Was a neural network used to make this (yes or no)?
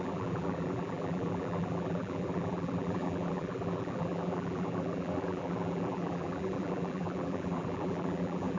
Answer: yes